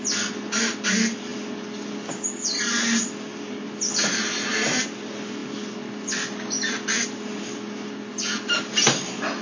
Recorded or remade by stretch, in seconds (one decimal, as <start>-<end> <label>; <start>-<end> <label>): 0.0-9.4 recorded